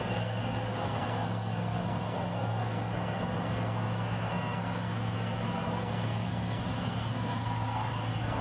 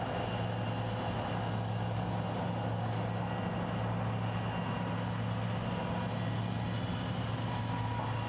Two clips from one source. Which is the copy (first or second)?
first